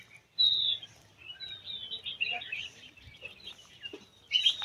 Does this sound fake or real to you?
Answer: real